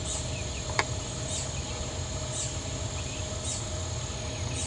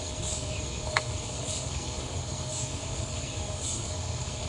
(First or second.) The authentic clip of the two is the first